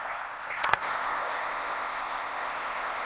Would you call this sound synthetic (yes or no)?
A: yes